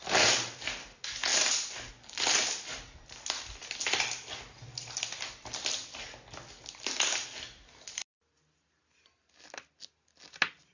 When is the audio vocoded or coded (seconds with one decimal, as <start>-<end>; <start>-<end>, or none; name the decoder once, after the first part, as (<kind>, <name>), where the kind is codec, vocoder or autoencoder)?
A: none

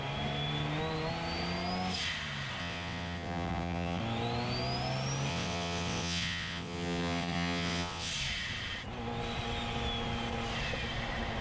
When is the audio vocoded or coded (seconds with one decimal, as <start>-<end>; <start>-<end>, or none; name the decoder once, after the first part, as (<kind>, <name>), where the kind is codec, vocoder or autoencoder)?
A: 2.6-4.0 (vocoder, WaveNeXt); 5.3-8.1

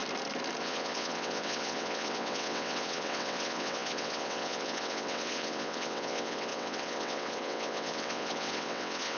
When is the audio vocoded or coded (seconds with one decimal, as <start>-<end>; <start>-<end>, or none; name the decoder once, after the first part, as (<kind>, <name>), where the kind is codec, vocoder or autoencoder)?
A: 0.6-9.2 (vocoder, WaveNeXt)

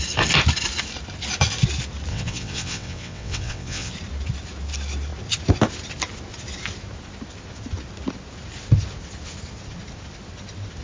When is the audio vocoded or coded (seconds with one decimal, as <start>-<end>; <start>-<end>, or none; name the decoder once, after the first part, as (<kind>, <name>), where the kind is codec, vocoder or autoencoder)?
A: 2.1-3.9 (vocoder, WaveNeXt)